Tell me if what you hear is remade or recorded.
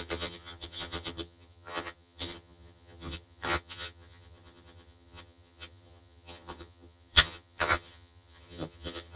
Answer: remade